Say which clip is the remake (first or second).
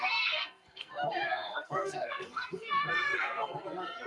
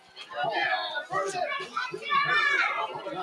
first